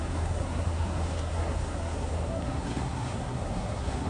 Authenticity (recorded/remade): remade